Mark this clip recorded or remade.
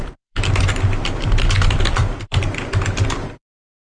remade